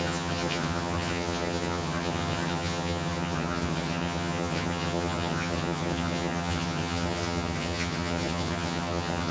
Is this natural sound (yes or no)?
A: no